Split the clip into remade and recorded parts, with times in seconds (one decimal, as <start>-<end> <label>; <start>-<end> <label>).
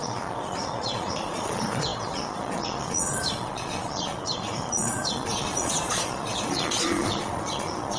0.0-8.0 remade